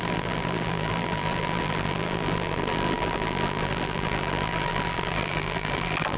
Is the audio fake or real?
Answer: fake